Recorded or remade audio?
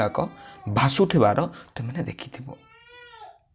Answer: recorded